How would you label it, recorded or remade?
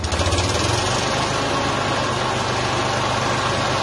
recorded